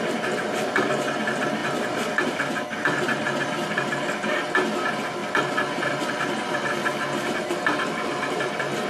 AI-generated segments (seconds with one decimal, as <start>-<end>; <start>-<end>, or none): none